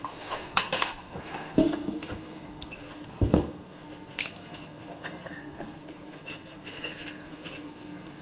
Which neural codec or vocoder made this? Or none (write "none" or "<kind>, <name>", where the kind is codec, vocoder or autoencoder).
codec, SNAC